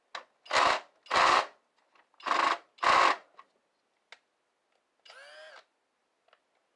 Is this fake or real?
real